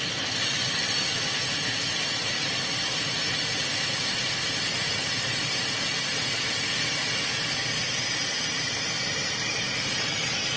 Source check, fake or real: real